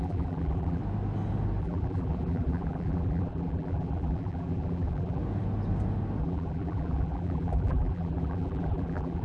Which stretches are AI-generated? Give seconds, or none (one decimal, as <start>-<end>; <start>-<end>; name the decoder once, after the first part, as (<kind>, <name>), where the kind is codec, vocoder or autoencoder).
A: 0.0-0.8 (vocoder, BigVGAN v2); 1.6-5.2; 6.2-9.2